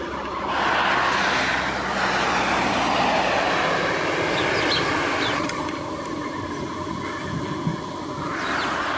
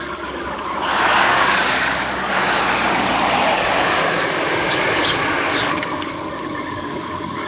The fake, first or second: second